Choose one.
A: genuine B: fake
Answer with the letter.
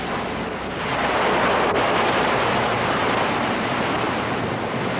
A